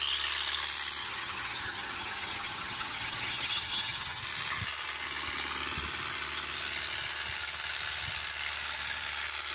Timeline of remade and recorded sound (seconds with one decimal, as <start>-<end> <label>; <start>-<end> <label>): 0.0-1.0 recorded; 1.0-4.2 remade; 4.2-9.5 recorded